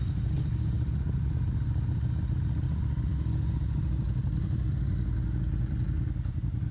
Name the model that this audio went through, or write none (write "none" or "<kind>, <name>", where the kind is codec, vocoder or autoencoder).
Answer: none